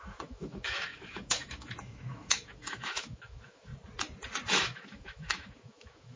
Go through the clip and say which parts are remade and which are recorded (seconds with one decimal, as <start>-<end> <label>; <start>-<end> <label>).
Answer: 0.0-3.7 remade; 3.7-4.5 recorded; 4.5-6.2 remade